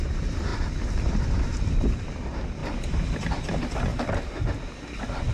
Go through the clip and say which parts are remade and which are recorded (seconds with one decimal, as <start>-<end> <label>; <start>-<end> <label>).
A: 0.0-0.5 remade; 0.5-1.0 recorded; 1.0-2.6 remade; 2.6-3.1 recorded; 3.1-5.3 remade